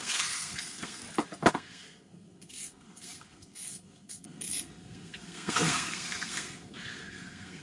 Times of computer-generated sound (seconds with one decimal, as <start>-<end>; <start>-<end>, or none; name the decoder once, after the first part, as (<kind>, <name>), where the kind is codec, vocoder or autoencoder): 0.0-1.0 (codec, SNAC); 1.5-7.6